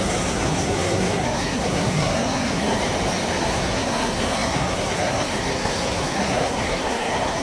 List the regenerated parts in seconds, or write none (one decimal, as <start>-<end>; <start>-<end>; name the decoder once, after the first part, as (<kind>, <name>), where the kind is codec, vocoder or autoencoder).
0.0-2.8 (codec, SNAC); 3.4-7.4

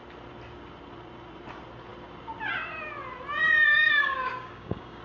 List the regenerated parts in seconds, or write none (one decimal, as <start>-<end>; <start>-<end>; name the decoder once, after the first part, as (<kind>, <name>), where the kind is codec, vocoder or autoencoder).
3.7-5.0 (codec, DAC)

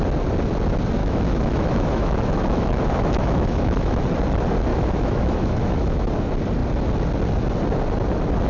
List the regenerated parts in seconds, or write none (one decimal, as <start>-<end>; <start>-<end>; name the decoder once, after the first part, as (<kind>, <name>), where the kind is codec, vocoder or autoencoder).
1.0-4.0 (autoencoder, DAC-VAE); 4.7-6.1

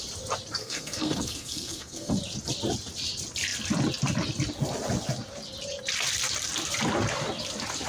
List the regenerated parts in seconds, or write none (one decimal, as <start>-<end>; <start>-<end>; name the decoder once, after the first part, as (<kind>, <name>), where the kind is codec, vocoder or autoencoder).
0.6-2.1 (codec, SNAC)